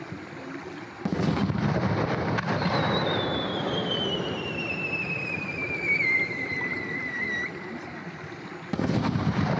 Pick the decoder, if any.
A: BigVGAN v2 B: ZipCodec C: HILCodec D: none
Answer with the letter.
A